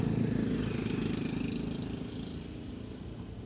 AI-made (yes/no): no